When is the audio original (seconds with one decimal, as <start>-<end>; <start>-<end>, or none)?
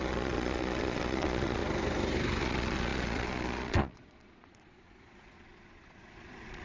1.6-2.4